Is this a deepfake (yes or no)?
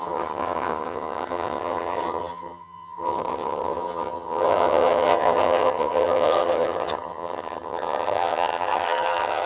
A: yes